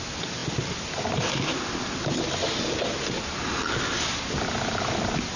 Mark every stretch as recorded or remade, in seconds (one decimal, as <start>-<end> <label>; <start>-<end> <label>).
0.0-5.4 recorded